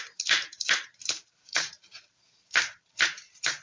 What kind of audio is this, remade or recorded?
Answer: remade